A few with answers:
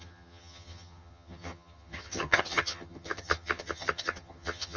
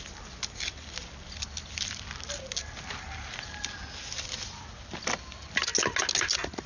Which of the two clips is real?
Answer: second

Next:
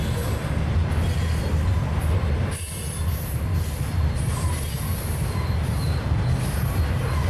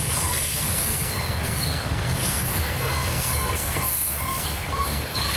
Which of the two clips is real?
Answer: first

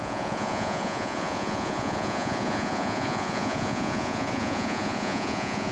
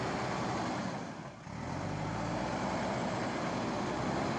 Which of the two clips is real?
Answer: second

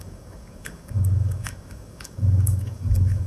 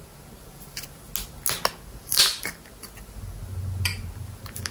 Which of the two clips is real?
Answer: second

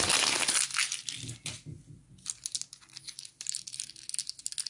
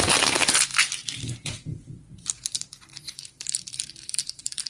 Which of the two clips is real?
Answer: first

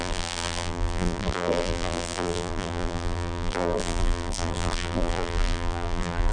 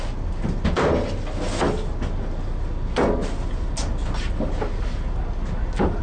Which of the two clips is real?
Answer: second